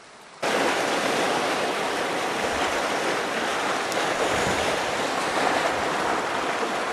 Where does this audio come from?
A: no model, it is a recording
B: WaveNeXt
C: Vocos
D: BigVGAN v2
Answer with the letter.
D